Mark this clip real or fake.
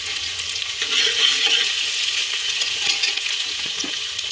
fake